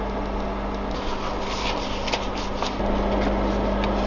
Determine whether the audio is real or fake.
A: real